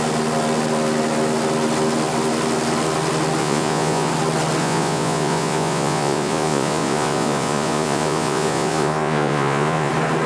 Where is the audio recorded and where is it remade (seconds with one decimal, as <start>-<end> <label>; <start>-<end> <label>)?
0.0-3.4 recorded; 3.4-4.1 remade; 4.1-4.6 recorded; 4.6-9.9 remade; 9.9-10.3 recorded